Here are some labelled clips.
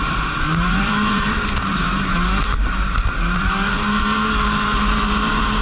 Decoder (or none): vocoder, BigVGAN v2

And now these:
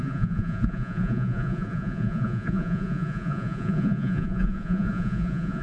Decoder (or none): vocoder, Vocos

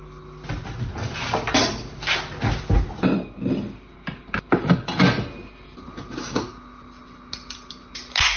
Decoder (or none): none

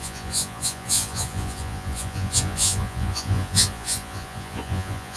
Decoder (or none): vocoder, Vocos